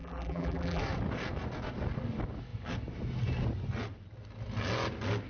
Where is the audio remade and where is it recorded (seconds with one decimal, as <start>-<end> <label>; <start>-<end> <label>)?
0.0-0.8 remade; 0.8-5.3 recorded